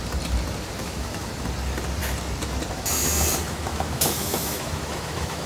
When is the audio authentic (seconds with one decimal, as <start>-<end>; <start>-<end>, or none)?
0.0-0.8; 1.3-3.4